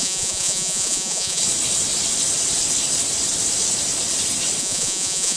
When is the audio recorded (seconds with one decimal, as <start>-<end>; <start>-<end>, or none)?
1.4-4.6